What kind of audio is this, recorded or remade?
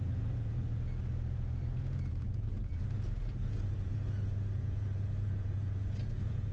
remade